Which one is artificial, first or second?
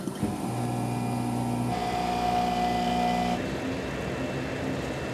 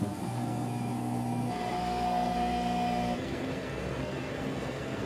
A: second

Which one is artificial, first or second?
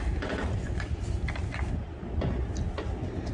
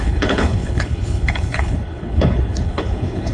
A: second